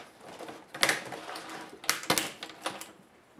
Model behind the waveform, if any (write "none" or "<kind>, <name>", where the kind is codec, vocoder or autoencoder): none